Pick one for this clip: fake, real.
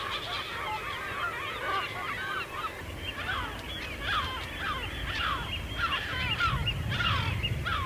real